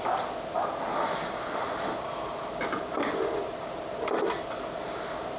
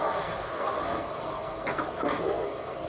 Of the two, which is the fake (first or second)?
second